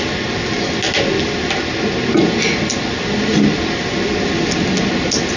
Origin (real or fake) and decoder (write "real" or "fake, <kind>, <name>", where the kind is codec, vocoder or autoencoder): real